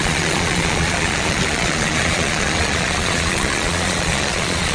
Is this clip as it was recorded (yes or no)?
no